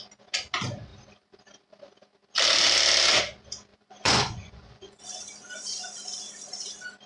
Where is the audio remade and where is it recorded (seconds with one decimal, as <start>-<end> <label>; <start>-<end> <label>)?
0.0-3.7 recorded; 3.7-5.0 remade; 5.0-7.1 recorded